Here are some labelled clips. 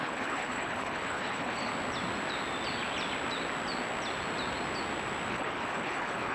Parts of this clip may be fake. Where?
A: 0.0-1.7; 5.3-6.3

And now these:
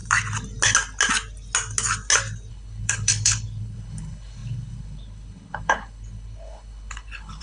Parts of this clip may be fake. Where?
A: 2.5-7.4

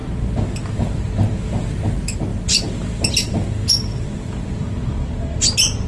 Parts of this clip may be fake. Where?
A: none